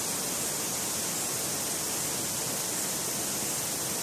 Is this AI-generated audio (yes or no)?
no